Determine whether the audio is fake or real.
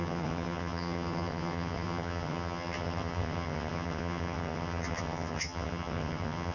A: fake